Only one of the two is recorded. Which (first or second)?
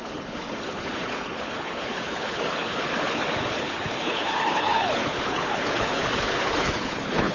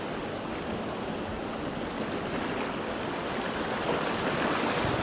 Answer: second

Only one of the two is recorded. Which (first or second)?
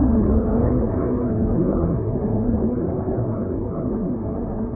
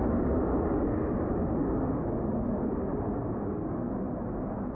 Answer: second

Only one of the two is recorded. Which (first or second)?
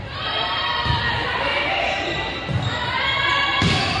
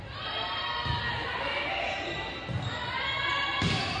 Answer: second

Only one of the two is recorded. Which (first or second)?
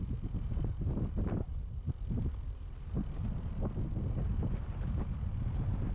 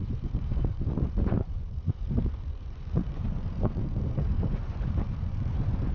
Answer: first